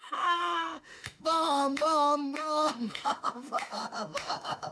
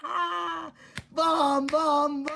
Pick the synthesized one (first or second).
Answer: first